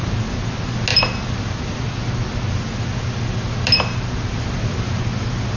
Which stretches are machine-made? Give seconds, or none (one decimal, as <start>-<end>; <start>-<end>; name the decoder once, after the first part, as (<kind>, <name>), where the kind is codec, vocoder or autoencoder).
none